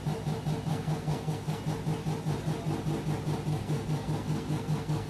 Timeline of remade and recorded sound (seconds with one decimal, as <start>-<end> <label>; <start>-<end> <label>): 0.0-0.7 recorded; 0.7-1.6 remade; 1.6-3.5 recorded; 3.5-5.1 remade

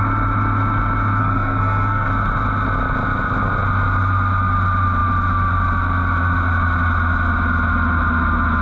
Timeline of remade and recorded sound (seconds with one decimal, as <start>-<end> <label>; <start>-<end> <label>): 0.0-1.2 recorded; 1.2-2.1 remade; 2.1-8.6 recorded

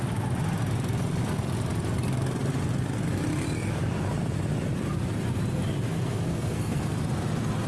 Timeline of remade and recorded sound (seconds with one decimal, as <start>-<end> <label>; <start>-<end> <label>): 0.0-5.9 recorded; 5.9-7.0 remade; 7.0-7.7 recorded

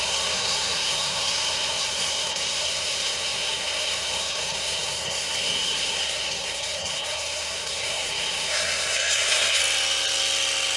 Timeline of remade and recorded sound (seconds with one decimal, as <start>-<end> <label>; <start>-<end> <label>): 0.0-9.6 remade; 9.6-10.8 recorded

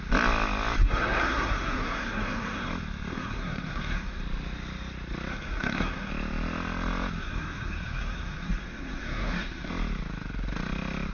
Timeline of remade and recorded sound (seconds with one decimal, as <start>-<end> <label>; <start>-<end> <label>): 0.0-0.8 recorded; 0.8-2.7 remade; 2.7-3.1 recorded; 3.1-4.2 remade; 4.2-5.3 recorded; 5.3-6.1 remade; 6.1-7.2 recorded; 7.2-9.7 remade; 9.7-11.1 recorded

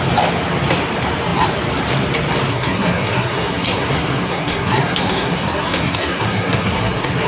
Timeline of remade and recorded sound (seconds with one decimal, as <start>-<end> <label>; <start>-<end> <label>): 0.0-2.5 recorded; 2.5-7.3 remade

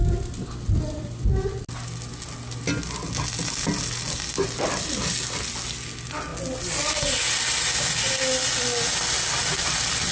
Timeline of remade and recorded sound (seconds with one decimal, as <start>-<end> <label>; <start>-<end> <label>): 0.0-10.1 recorded

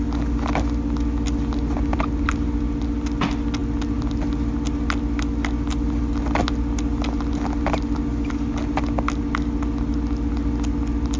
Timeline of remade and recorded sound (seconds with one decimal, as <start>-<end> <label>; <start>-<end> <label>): 0.0-11.2 recorded